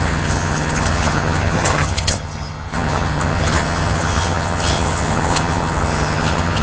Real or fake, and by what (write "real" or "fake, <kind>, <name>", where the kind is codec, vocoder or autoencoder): fake, vocoder, HiFi-GAN